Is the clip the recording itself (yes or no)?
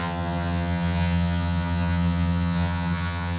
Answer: no